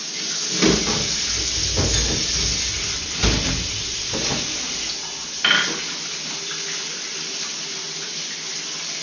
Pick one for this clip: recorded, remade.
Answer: recorded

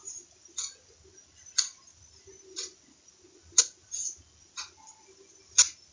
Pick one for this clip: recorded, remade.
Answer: recorded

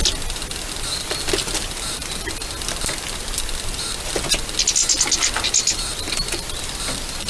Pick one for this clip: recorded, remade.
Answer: recorded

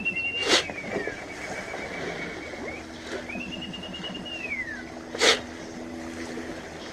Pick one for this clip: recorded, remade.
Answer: recorded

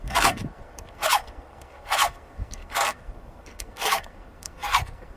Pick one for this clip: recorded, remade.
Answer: remade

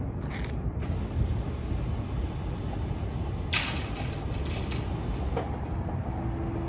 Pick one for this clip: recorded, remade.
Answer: recorded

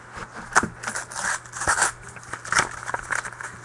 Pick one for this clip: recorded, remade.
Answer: recorded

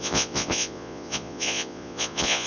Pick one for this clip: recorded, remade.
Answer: remade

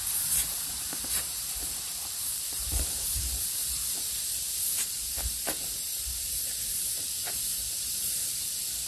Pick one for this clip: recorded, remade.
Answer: remade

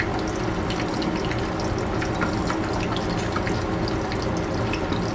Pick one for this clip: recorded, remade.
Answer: recorded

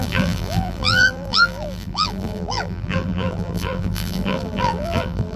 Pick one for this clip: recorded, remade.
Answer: remade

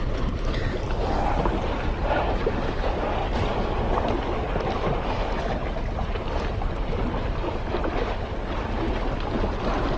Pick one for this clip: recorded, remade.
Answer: recorded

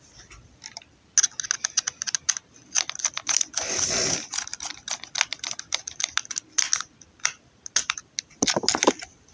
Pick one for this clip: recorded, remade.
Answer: recorded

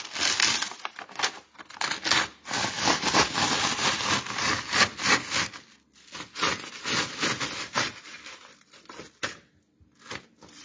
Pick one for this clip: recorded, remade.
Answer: recorded